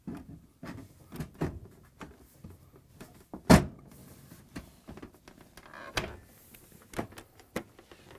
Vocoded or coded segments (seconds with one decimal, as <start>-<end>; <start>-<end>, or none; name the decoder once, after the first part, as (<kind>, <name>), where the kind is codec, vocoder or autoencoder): 2.9-3.5 (vocoder, BigVGAN v2)